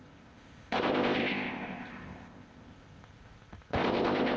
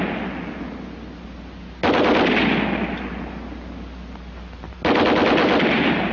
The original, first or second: second